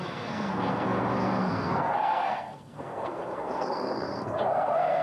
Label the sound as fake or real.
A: fake